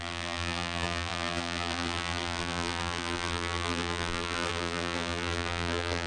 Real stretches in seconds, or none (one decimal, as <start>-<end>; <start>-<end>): none